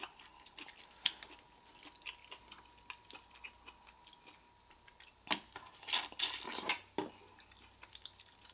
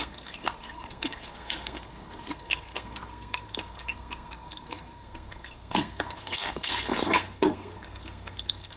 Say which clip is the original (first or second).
first